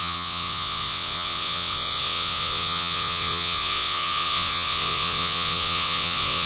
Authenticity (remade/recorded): remade